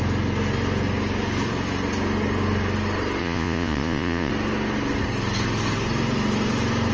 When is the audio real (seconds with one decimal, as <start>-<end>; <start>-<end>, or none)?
0.0-3.2; 4.3-6.9